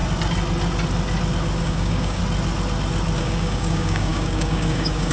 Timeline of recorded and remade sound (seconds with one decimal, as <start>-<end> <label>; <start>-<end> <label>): 0.0-1.6 recorded; 1.6-2.2 remade; 2.2-3.2 recorded; 3.2-5.1 remade